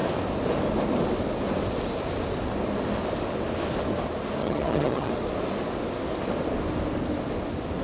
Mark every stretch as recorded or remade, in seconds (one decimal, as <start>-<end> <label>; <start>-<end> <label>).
0.0-4.4 recorded; 4.4-5.1 remade; 5.1-7.8 recorded